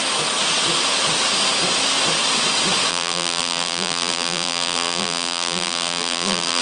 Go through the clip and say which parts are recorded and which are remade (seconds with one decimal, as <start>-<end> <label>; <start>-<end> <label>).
0.0-2.9 recorded; 2.9-6.6 remade